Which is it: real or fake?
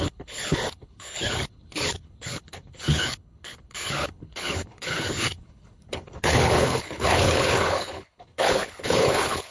fake